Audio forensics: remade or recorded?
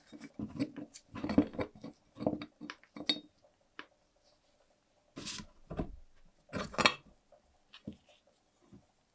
recorded